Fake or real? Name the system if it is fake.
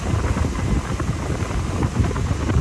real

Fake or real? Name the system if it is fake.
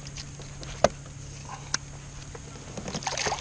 real